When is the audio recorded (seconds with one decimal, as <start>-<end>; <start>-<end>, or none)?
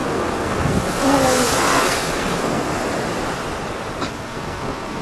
2.7-4.1